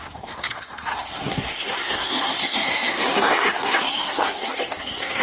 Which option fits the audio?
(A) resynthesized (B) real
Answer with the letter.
A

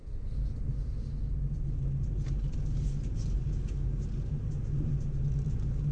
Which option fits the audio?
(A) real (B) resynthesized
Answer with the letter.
A